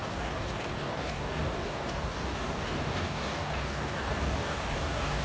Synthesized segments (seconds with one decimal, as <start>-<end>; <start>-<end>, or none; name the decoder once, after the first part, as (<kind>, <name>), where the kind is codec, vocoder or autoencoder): 0.0-5.2 (codec, DAC)